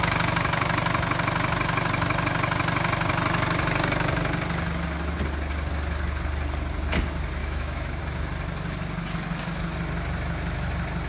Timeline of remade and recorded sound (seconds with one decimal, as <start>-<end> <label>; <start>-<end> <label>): 0.0-7.4 recorded; 7.4-8.0 remade; 8.0-11.1 recorded